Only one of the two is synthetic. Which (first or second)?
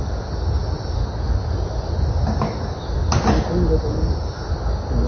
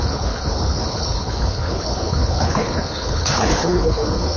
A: second